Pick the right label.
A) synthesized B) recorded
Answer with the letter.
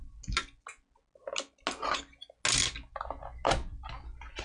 B